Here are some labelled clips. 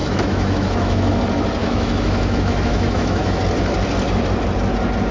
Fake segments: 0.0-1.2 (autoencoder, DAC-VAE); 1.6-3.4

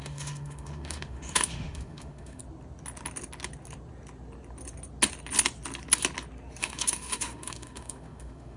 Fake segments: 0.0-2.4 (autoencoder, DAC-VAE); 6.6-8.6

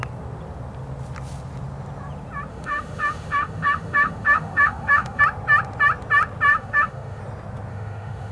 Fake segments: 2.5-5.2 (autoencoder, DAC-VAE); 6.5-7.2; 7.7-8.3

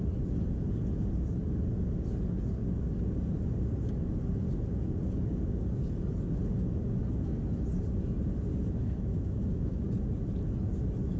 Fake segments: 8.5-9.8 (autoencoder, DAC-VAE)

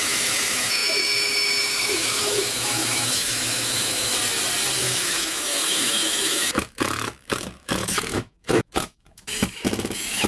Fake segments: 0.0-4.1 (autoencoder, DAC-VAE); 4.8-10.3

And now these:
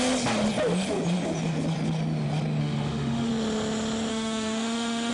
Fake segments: 2.6-3.3 (autoencoder, DAC-VAE); 4.1-5.1

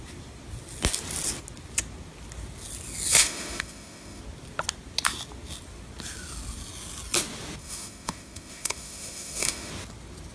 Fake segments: 3.1-4.2 (autoencoder, DAC-VAE); 7.6-9.7